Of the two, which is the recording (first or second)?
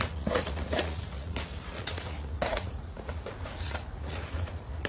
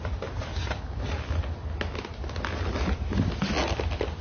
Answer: second